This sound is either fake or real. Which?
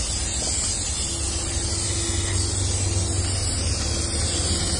real